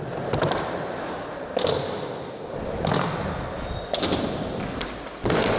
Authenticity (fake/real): real